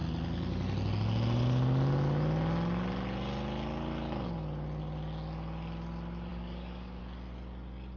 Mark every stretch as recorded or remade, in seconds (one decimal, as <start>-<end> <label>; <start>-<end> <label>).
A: 0.0-6.3 recorded; 6.3-7.0 remade; 7.0-8.0 recorded